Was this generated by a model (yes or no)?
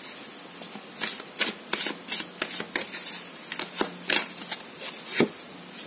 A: no